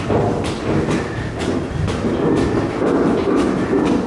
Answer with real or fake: real